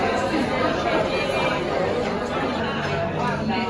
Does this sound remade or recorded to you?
recorded